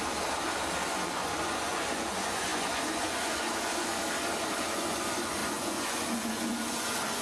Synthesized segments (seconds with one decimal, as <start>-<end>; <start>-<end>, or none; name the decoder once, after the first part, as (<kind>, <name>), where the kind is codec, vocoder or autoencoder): 0.9-4.0 (vocoder, Vocos); 4.6-7.2